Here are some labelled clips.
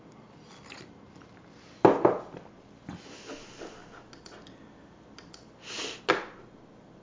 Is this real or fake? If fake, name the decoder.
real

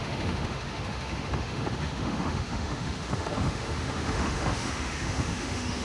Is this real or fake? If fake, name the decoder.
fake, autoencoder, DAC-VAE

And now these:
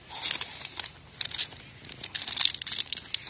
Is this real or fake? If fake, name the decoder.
real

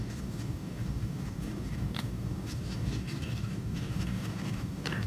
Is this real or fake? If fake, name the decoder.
fake, codec, DAC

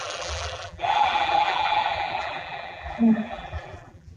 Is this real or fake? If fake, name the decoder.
fake, vocoder, BigVGAN v2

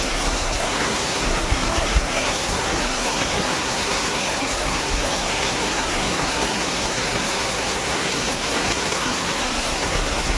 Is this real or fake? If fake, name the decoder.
fake, codec, SNAC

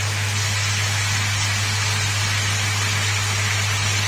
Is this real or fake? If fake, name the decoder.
real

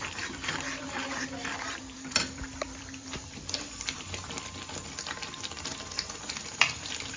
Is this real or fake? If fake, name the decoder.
fake, vocoder, BigVGAN v2